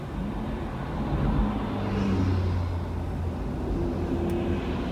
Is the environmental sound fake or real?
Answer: real